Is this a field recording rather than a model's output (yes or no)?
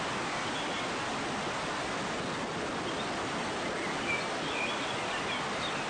yes